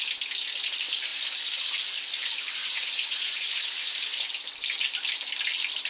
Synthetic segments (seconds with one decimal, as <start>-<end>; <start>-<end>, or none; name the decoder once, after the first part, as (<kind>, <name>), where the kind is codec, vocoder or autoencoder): 2.6-3.5 (vocoder, Vocos)